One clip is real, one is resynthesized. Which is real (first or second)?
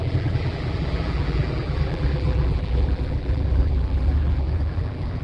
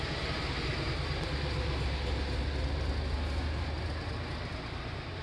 second